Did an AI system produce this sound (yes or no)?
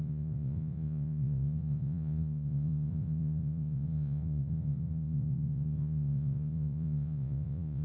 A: yes